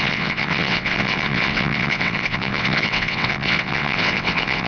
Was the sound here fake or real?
fake